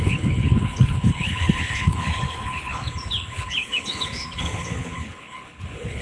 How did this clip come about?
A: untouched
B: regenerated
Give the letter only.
B